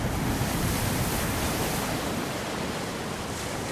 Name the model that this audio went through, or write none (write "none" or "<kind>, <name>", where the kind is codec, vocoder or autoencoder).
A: none